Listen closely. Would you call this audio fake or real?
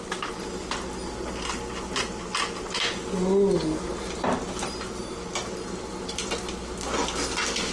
real